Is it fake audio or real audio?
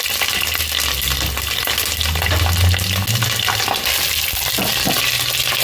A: real